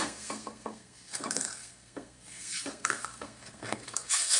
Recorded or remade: remade